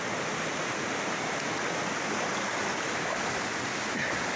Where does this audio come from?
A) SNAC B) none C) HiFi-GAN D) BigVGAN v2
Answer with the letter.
B